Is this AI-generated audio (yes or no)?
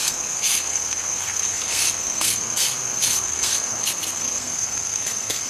yes